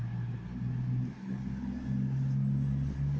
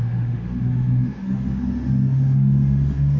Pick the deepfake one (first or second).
second